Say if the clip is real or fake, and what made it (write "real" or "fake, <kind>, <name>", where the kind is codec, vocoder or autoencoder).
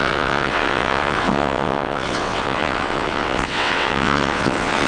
fake, vocoder, WaveNeXt